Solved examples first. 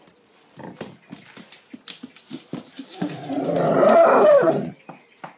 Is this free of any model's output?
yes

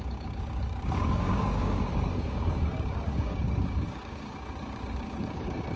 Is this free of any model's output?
no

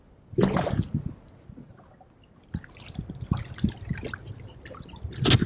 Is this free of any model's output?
yes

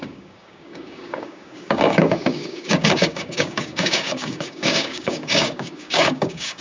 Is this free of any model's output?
no